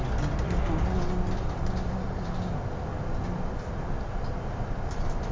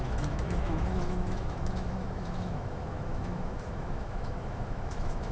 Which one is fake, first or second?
second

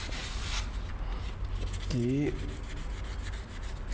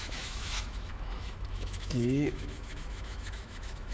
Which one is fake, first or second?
second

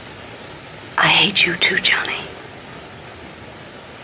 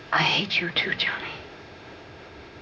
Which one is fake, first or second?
second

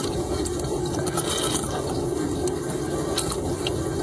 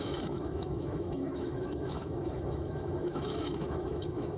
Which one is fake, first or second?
second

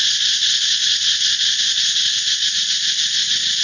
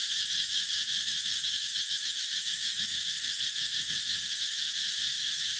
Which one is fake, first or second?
second